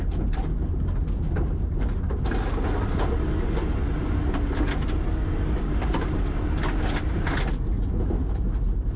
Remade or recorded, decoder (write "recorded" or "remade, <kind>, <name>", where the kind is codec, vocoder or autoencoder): recorded